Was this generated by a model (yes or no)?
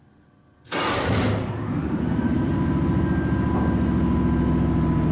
no